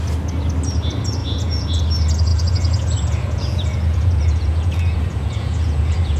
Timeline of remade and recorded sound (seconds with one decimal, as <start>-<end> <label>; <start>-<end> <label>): 0.0-1.2 recorded; 1.2-1.8 remade; 1.8-2.3 recorded; 2.3-6.2 remade